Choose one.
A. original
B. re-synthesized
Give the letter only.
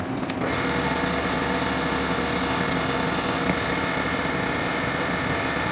A